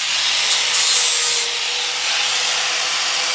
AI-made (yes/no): no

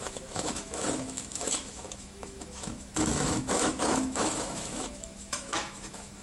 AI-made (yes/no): yes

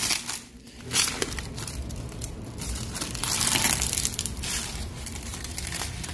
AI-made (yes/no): yes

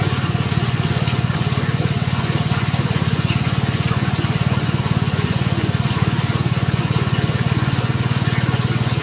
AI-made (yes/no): yes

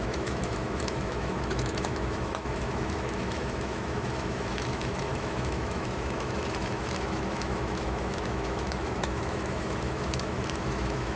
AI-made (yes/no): yes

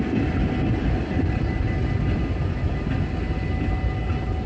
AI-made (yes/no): no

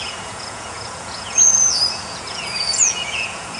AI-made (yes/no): yes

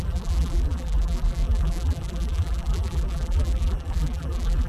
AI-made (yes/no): yes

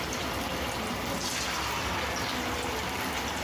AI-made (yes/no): no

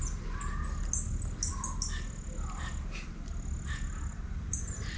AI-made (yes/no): no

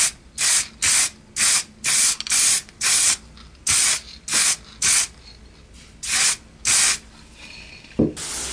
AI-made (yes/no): no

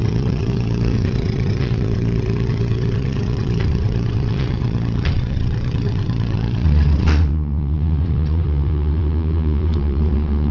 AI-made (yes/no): yes